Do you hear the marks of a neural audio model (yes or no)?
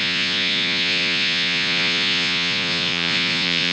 yes